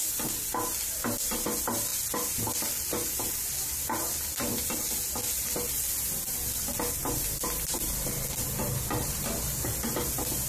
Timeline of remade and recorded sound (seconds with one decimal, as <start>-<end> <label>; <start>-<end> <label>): 0.0-10.5 recorded